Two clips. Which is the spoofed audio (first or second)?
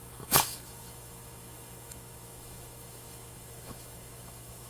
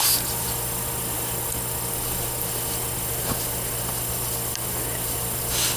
first